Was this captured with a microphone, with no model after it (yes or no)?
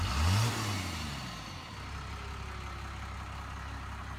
yes